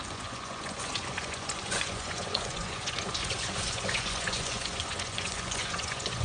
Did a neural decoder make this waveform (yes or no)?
yes